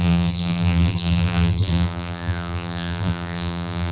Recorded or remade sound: remade